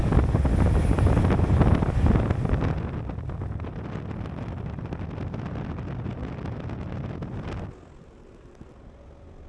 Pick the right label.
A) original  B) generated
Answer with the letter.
A